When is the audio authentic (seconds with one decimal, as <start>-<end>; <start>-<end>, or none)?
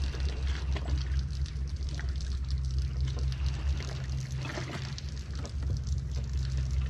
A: 0.0-6.9